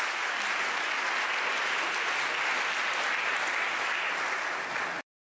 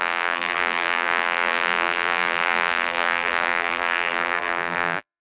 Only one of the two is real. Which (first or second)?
first